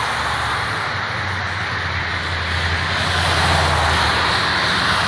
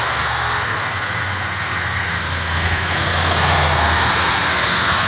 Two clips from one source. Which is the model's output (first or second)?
second